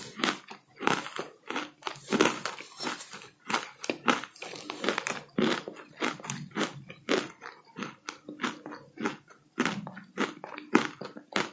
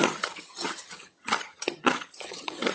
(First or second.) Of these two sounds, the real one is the first